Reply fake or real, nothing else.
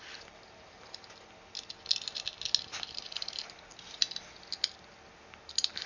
real